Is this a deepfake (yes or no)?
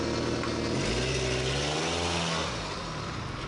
no